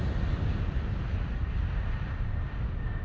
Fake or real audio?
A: real